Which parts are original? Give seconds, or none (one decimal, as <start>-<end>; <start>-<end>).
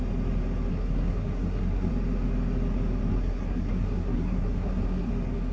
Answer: 0.0-0.7; 1.9-3.1; 5.1-5.5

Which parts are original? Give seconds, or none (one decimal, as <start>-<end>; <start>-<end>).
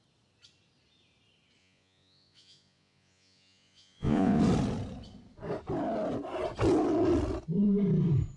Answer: 0.0-1.6; 4.4-8.4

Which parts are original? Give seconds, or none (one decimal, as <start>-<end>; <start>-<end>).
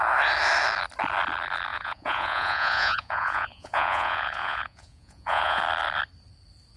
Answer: 0.0-1.7; 5.6-6.8